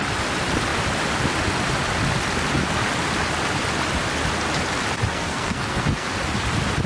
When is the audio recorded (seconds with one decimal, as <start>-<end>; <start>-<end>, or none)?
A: 0.0-5.1; 6.2-6.9

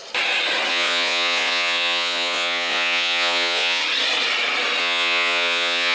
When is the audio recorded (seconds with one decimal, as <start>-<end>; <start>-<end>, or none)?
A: 0.0-0.7; 3.8-4.8